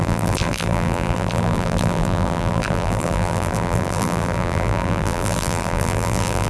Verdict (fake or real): fake